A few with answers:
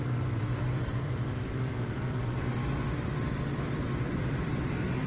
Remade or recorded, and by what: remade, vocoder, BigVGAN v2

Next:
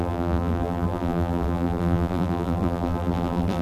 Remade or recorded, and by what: remade, vocoder, BigVGAN v2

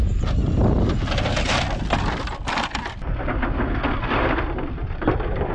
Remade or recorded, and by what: recorded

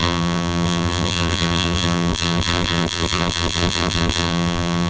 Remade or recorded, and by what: remade, vocoder, BigVGAN v2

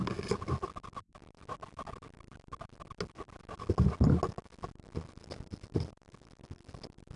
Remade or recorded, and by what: recorded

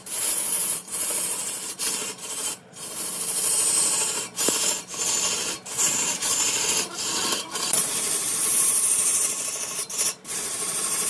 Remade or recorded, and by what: remade, vocoder, BigVGAN v2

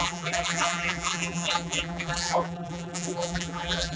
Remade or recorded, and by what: remade, vocoder, BigVGAN v2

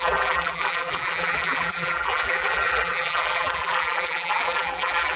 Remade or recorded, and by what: remade, vocoder, BigVGAN v2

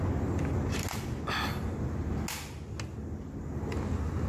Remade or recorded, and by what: recorded